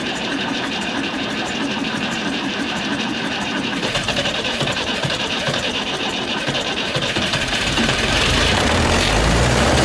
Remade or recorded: remade